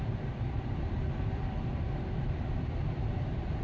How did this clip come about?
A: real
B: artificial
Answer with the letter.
B